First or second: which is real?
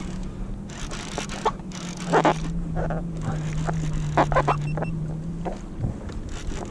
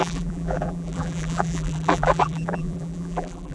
first